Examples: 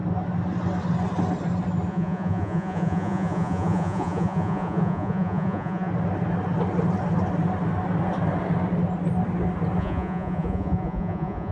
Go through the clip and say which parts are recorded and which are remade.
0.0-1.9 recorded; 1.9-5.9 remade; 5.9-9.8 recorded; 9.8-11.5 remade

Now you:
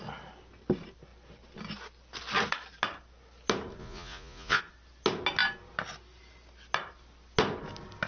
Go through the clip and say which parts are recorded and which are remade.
0.0-3.8 recorded; 3.8-4.6 remade; 4.6-8.1 recorded

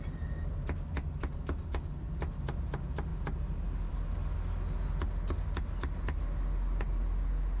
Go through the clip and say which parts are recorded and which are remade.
0.0-7.6 recorded

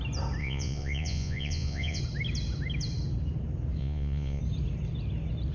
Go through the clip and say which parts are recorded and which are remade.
0.0-0.4 recorded; 0.4-2.0 remade; 2.0-3.8 recorded; 3.8-4.4 remade; 4.4-5.5 recorded